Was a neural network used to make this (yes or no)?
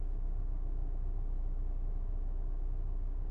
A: no